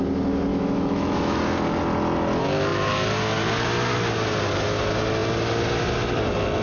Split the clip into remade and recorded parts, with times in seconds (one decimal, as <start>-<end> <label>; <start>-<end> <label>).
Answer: 0.0-0.5 recorded; 0.5-1.4 remade; 1.4-6.6 recorded